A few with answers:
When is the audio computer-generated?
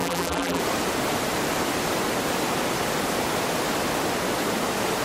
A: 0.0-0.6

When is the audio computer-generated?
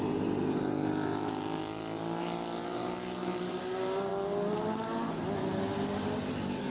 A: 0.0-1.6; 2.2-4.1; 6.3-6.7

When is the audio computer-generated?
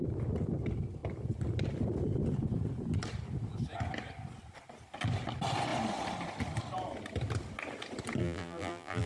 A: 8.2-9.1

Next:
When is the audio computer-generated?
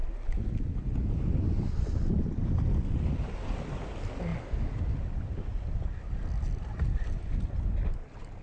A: 4.3-5.7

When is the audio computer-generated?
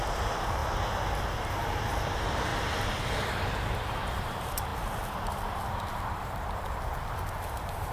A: 0.0-0.6; 1.5-2.5; 3.0-7.9